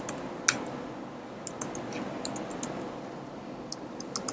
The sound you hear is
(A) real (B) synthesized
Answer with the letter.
A